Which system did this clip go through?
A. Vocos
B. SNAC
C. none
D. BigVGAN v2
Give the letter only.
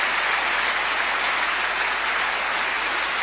C